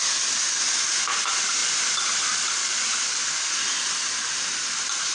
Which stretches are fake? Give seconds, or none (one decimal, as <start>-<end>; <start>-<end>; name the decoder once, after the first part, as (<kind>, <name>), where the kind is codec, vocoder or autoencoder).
none